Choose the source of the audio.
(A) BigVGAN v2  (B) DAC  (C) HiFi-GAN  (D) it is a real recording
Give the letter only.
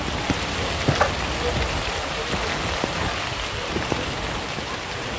D